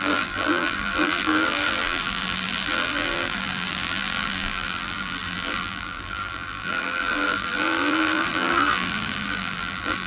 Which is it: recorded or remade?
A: remade